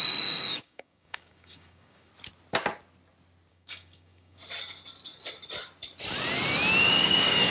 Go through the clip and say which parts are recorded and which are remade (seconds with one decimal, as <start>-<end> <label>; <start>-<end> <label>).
0.0-2.1 remade; 2.1-3.5 recorded; 3.5-4.4 remade; 4.4-6.8 recorded; 6.8-7.5 remade